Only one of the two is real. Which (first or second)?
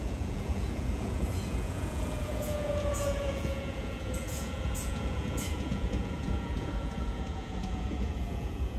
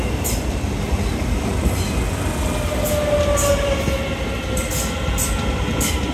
second